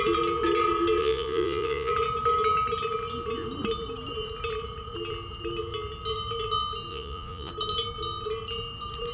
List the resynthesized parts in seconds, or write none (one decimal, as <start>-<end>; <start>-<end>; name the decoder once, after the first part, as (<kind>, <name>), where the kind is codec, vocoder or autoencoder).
1.0-1.9 (vocoder, Vocos); 6.9-7.5

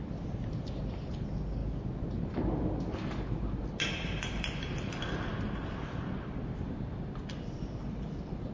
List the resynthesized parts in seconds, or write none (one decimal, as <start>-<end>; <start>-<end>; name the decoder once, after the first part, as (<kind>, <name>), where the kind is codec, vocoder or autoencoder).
none